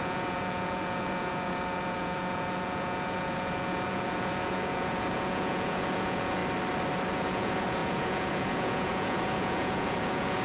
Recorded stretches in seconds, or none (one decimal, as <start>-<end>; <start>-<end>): 6.4-7.1